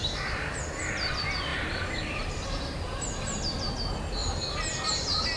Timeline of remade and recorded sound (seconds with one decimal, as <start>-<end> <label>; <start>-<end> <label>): 0.0-0.6 remade; 0.6-1.5 recorded; 1.5-3.4 remade; 3.4-4.2 recorded; 4.2-5.4 remade